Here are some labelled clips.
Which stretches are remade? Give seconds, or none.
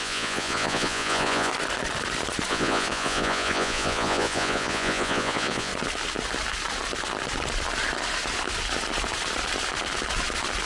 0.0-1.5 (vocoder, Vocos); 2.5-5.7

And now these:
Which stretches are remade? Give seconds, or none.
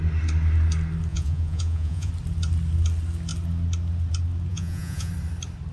1.1-2.1 (vocoder, Vocos); 4.5-5.1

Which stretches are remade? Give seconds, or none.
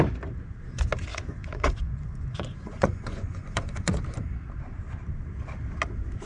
1.1-4.0 (vocoder, Vocos)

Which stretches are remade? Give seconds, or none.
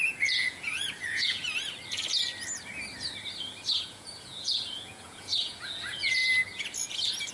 0.0-1.4 (vocoder, Vocos); 3.8-6.2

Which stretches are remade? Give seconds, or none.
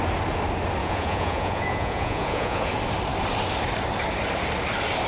0.8-2.7 (vocoder, Vocos)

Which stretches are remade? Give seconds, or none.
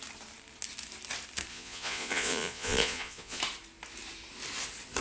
1.5-3.4 (vocoder, Vocos)